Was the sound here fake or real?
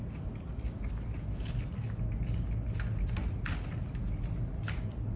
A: real